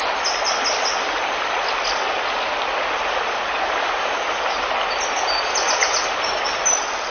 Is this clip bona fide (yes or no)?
yes